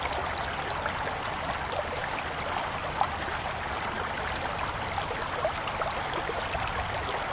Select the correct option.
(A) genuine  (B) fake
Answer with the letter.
A